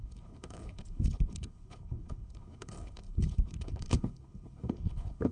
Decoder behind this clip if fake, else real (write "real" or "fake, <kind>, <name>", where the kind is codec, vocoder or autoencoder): fake, codec, HILCodec